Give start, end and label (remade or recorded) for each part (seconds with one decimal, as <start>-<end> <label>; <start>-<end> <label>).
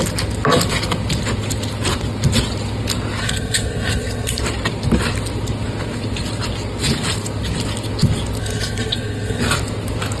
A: 0.0-3.2 recorded; 3.2-4.4 remade; 4.4-8.4 recorded; 8.4-9.4 remade; 9.4-10.2 recorded